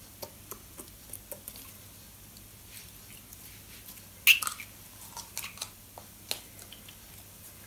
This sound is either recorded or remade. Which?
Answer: recorded